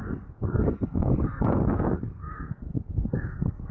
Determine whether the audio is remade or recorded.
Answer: remade